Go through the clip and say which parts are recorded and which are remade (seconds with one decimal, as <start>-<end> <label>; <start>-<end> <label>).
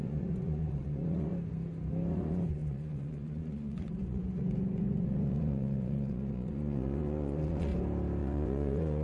0.0-1.3 remade; 1.3-2.1 recorded; 2.1-7.7 remade; 7.7-8.2 recorded; 8.2-9.0 remade